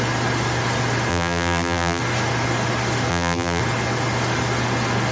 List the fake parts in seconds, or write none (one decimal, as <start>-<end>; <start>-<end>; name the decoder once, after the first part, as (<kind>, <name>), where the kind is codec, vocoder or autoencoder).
1.1-2.0 (vocoder, BigVGAN v2); 3.1-3.6